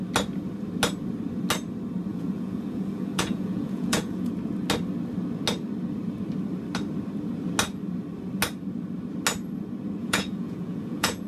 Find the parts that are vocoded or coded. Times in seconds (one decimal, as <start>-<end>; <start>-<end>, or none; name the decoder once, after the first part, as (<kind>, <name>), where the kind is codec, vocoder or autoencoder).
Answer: 2.1-4.3 (vocoder, Vocos); 10.0-11.3